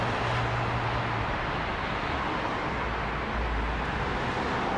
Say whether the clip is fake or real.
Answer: real